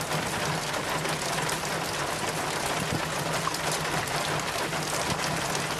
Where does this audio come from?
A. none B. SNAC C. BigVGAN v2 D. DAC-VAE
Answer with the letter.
A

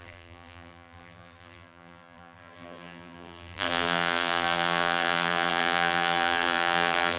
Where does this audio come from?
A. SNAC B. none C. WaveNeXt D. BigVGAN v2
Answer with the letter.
D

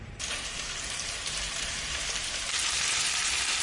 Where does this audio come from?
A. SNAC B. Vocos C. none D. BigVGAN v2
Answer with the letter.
D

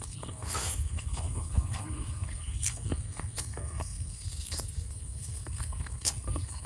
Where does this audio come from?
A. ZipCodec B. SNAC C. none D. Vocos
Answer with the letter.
B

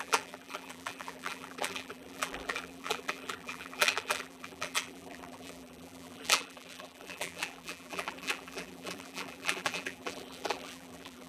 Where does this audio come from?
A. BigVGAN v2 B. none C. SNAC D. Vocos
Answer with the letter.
A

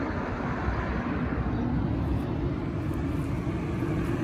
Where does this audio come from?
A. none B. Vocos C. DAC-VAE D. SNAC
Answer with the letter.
A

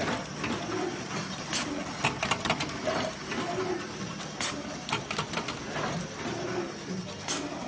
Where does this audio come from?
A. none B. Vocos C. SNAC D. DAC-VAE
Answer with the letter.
A